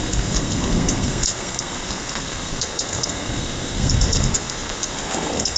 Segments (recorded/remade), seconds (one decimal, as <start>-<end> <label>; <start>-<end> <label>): 0.0-5.6 remade